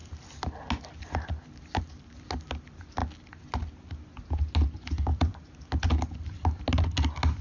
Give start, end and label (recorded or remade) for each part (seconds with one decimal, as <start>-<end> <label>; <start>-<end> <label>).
0.0-5.1 recorded; 5.1-5.7 remade; 5.7-7.4 recorded